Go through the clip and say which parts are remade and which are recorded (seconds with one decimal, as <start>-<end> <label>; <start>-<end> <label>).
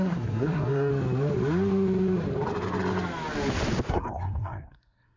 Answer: 0.0-0.9 remade; 0.9-3.9 recorded; 3.9-5.2 remade